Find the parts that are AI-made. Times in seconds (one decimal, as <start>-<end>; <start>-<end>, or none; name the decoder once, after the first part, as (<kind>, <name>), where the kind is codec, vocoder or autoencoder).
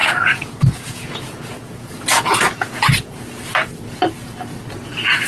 0.0-3.2 (vocoder, Vocos)